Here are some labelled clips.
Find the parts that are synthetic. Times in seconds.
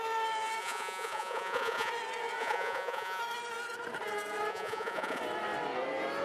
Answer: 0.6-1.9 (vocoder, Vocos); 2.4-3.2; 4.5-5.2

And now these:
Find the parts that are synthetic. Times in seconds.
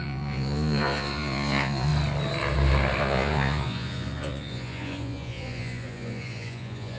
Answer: 0.0-1.9 (vocoder, Vocos); 3.0-7.0